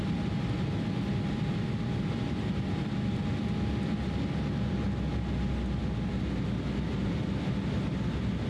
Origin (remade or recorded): recorded